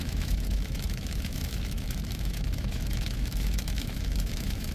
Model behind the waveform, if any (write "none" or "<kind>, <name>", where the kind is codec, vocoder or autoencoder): autoencoder, DAC-VAE